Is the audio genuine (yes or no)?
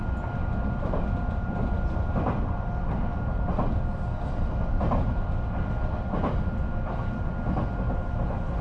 yes